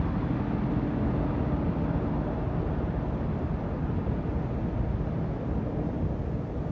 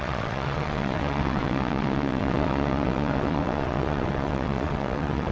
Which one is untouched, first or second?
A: first